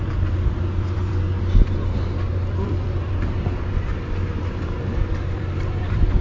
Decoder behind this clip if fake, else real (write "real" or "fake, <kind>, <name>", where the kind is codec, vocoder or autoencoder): fake, vocoder, BigVGAN v2